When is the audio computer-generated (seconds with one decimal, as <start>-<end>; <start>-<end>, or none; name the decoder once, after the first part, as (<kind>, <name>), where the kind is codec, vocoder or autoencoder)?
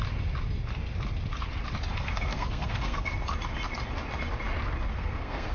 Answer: 2.0-3.1 (codec, SNAC); 4.9-5.5